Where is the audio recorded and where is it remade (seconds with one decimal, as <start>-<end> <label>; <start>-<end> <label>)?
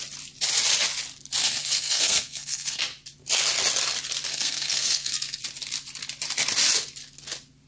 0.0-1.4 recorded; 1.4-2.8 remade; 2.8-4.3 recorded; 4.3-5.4 remade; 5.4-7.7 recorded